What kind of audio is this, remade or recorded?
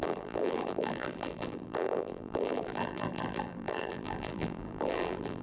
remade